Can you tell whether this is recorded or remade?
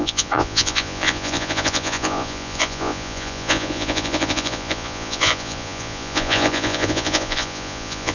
remade